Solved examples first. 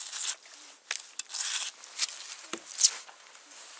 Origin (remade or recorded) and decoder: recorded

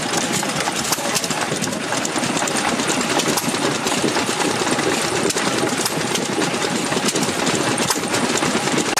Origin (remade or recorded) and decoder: recorded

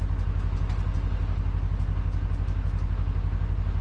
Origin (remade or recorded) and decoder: recorded